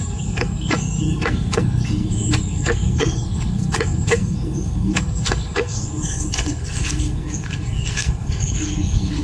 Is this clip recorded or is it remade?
remade